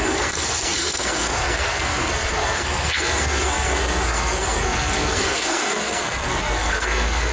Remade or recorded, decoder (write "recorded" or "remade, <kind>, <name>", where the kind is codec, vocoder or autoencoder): remade, codec, SNAC